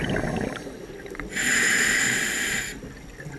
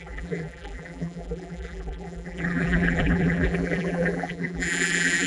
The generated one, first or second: second